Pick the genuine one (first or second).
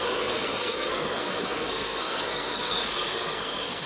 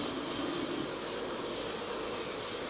second